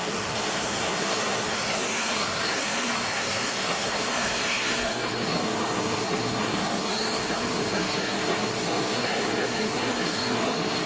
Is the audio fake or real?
fake